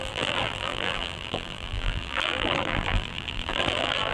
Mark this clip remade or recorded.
remade